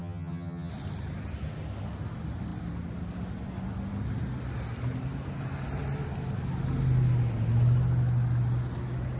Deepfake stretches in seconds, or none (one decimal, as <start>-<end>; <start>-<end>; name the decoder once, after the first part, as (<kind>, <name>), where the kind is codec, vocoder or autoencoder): 0.0-0.7 (vocoder, HiFi-GAN)